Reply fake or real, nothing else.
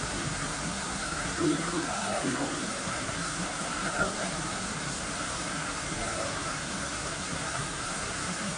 fake